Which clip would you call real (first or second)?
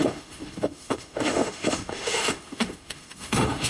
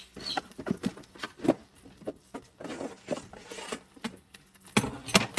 second